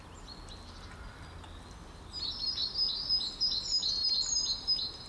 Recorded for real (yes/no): yes